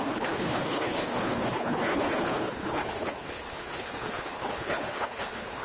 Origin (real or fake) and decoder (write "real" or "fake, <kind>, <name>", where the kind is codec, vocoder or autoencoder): fake, codec, HILCodec